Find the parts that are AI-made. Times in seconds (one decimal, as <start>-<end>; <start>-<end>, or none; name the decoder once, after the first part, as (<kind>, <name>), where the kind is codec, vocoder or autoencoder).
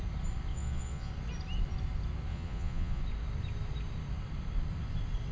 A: 0.5-1.1 (vocoder, Vocos); 2.3-3.0